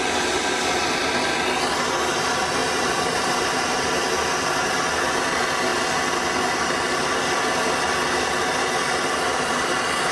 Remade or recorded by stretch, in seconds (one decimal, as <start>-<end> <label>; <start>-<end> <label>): 0.0-2.6 recorded; 2.6-3.9 remade; 3.9-10.1 recorded